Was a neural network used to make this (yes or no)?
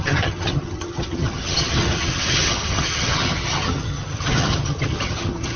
yes